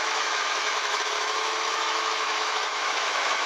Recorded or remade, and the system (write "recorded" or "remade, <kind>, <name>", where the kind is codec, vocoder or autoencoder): remade, autoencoder, DAC-VAE